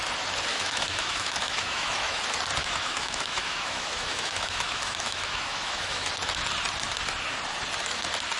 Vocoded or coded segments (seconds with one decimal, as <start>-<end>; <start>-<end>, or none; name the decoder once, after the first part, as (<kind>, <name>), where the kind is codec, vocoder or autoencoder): 0.5-2.2 (autoencoder, DAC-VAE); 2.6-6.1